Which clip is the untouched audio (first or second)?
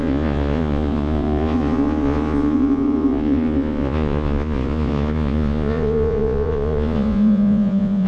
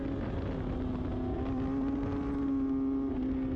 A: second